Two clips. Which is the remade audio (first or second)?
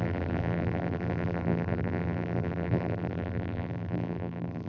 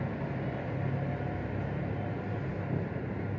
first